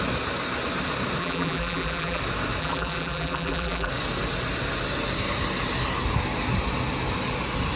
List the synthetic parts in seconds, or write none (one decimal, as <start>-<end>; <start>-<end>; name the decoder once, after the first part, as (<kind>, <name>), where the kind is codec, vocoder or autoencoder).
1.2-2.2 (vocoder, BigVGAN v2); 2.6-3.9